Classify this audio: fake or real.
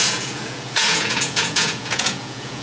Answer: fake